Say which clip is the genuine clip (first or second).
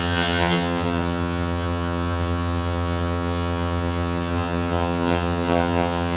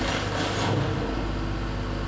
second